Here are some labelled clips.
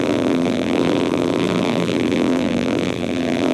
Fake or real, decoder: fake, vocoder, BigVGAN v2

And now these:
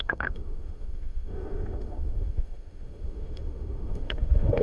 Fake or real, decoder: fake, autoencoder, DAC-VAE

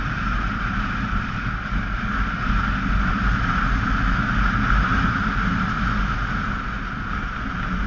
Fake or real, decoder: real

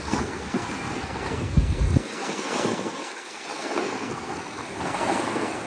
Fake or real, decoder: fake, codec, SNAC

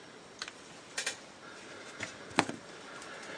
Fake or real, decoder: real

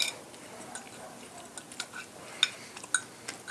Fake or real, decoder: real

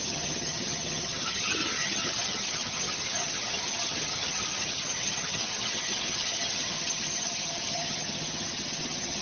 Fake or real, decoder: fake, vocoder, HiFi-GAN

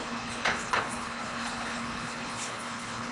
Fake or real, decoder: fake, codec, HILCodec